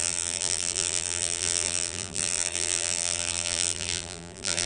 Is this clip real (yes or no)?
no